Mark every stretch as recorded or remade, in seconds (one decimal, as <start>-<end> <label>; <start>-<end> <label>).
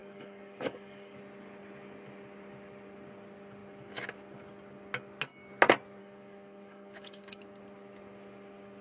0.0-1.2 remade; 1.2-6.0 recorded; 6.0-7.4 remade; 7.4-8.8 recorded